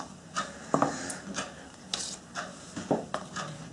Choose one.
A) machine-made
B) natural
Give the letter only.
B